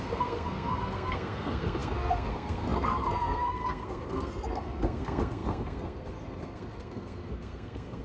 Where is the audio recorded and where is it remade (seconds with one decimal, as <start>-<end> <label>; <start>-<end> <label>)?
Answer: 0.0-8.0 remade